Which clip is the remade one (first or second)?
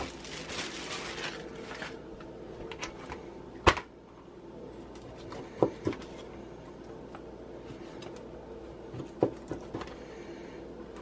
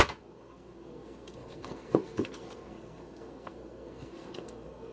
second